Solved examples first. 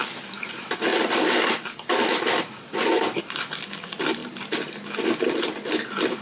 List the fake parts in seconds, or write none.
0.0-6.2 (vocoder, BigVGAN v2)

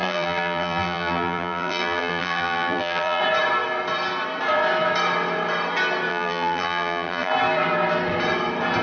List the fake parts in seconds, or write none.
0.0-3.2 (vocoder, BigVGAN v2); 6.1-7.3